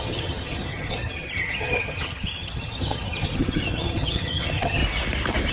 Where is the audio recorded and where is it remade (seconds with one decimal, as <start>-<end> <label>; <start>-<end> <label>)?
0.0-4.8 remade; 4.8-5.5 recorded